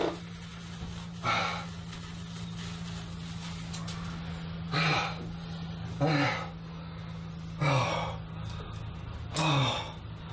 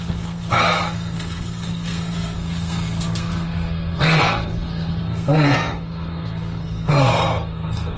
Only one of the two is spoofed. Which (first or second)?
second